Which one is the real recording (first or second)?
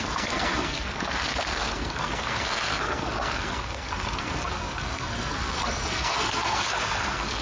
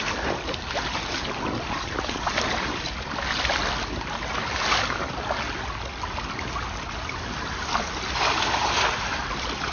second